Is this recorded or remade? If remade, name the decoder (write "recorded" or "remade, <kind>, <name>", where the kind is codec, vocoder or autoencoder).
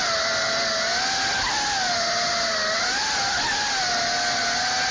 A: recorded